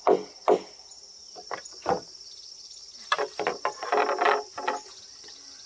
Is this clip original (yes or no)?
yes